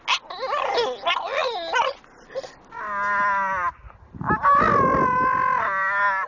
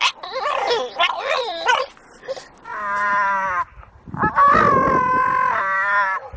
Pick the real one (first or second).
first